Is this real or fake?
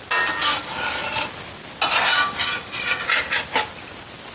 real